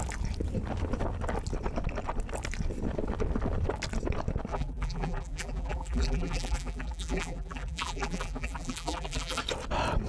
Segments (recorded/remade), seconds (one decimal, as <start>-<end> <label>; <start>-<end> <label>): 0.0-4.5 recorded; 4.5-9.4 remade; 9.4-10.1 recorded